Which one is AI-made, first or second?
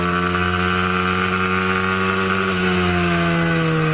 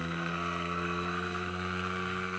second